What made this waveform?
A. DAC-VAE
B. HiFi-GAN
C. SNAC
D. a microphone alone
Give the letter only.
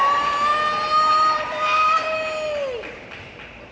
D